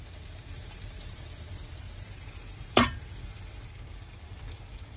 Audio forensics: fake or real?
fake